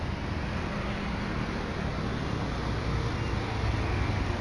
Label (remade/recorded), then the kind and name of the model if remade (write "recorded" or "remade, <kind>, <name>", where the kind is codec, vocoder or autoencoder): recorded